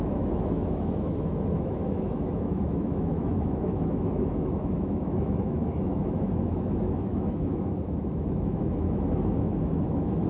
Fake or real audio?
fake